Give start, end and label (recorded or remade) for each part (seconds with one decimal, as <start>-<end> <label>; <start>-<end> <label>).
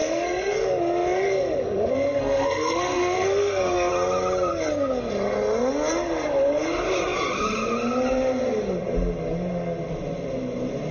0.0-3.9 remade; 3.9-4.5 recorded; 4.5-5.1 remade; 5.1-10.9 recorded